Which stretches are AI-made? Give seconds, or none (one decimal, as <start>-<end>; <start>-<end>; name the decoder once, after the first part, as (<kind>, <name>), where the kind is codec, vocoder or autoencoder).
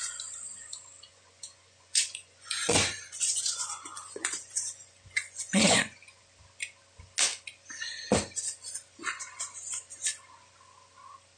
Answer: 1.1-6.2 (vocoder, Vocos)